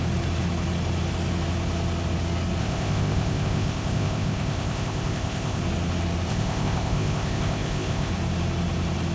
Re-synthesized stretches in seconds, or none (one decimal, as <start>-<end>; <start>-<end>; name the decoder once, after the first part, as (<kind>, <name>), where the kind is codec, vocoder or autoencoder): 2.6-5.6 (codec, ZipCodec); 6.3-8.1